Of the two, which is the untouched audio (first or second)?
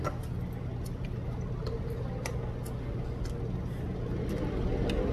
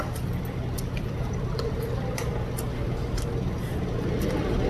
first